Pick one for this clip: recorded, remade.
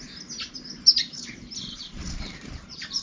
remade